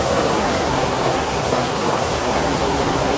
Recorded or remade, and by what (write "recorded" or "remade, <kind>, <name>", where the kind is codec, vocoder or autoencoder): remade, codec, SNAC